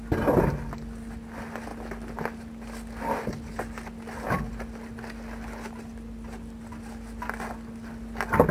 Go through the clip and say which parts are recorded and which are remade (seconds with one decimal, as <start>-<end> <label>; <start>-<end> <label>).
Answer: 0.0-8.5 recorded